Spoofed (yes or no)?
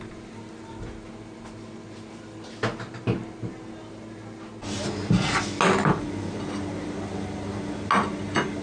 no